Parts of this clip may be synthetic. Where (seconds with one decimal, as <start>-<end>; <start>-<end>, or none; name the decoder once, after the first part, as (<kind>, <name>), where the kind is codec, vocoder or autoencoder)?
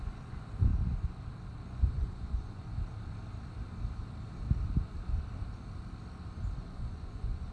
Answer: 0.0-0.7 (vocoder, Vocos); 1.6-2.7; 6.6-7.5